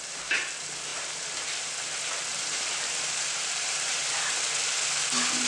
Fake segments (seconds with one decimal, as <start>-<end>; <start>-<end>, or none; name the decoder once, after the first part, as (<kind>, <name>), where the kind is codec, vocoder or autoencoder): 0.9-1.6 (vocoder, BigVGAN v2); 2.3-4.3